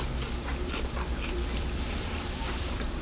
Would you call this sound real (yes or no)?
no